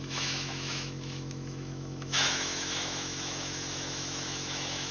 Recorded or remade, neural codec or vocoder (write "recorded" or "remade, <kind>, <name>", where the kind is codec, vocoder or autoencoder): remade, autoencoder, DAC-VAE